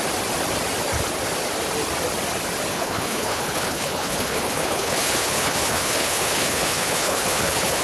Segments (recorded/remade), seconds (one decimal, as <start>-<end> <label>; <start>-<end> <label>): 0.0-2.7 recorded; 2.7-7.8 remade